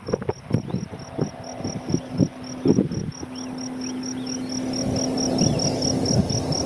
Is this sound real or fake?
real